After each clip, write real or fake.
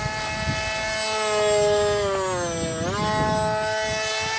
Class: real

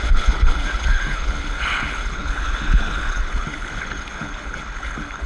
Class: fake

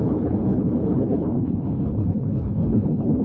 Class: fake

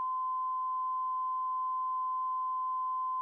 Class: real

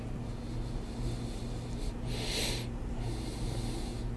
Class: real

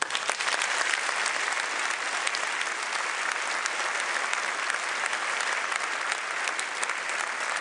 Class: real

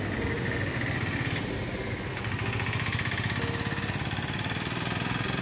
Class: real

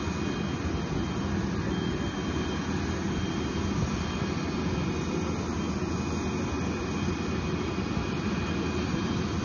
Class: real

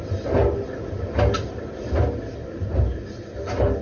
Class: real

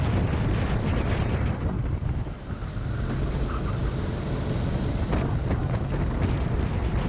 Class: real